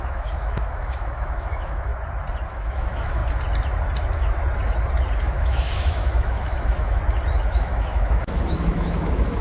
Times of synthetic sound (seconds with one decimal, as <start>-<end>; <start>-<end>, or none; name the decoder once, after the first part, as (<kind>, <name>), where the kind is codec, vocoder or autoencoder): 0.0-1.9 (autoencoder, DAC-VAE); 2.5-3.2; 5.2-7.0; 7.5-9.4